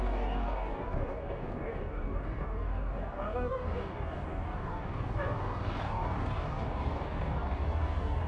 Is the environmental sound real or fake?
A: fake